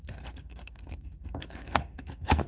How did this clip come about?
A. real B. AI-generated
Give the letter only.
B